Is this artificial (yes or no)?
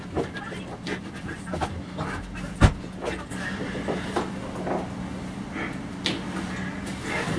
no